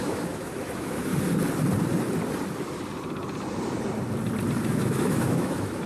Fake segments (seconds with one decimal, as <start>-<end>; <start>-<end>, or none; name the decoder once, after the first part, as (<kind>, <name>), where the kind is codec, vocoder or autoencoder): 0.0-1.1 (autoencoder, DAC-VAE); 4.6-5.9